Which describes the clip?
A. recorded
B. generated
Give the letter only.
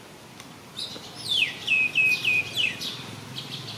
A